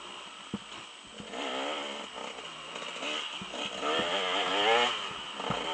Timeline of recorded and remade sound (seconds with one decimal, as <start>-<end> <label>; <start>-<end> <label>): 0.0-5.7 recorded